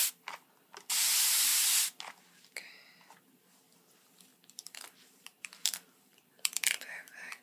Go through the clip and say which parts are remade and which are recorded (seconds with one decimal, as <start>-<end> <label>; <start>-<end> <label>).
0.0-0.6 remade; 0.6-4.3 recorded; 4.3-7.4 remade